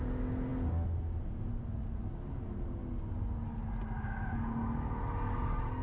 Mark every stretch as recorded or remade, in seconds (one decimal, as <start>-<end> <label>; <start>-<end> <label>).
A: 0.0-5.8 recorded